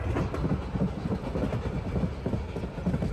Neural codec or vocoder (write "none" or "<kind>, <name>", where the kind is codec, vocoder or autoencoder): none